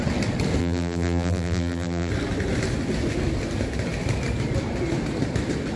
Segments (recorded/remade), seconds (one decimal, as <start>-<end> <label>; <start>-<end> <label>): 0.0-0.6 recorded; 0.6-2.1 remade; 2.1-5.8 recorded